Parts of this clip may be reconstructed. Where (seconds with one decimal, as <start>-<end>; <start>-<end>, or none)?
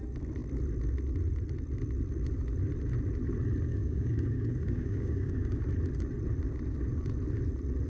3.7-5.6